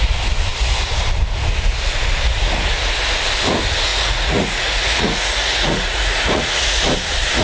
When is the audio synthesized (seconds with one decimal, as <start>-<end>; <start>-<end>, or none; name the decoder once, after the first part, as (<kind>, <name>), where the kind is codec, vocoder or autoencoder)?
3.9-6.8 (vocoder, Vocos)